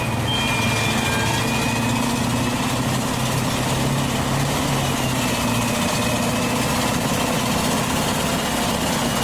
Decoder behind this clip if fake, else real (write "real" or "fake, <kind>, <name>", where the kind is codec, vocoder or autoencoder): real